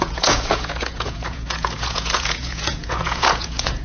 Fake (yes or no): yes